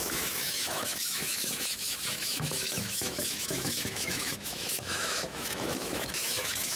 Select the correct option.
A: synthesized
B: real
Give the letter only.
A